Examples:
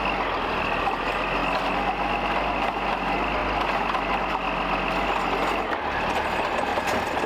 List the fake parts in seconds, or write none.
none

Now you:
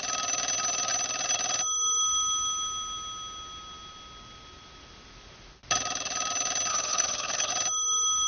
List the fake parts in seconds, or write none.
6.7-7.5 (codec, HILCodec)